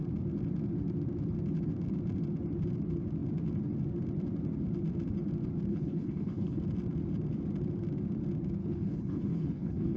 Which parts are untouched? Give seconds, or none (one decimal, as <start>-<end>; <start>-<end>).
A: 0.0-5.7; 6.6-8.6